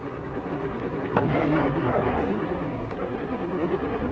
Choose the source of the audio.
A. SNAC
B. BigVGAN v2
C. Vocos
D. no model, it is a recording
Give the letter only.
A